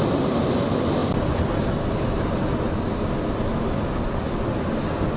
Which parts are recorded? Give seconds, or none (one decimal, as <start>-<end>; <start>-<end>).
0.0-5.2